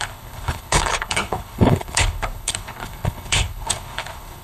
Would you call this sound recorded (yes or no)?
no